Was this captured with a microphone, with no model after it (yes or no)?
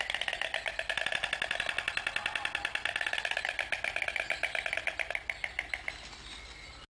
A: yes